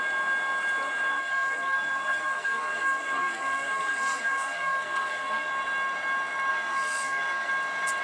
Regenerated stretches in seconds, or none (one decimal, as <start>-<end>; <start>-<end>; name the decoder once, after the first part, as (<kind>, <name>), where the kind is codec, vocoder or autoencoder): 1.1-5.5 (codec, SNAC); 6.5-7.5